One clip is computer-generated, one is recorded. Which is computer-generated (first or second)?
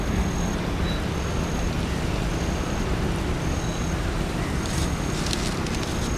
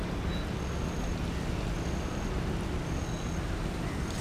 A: first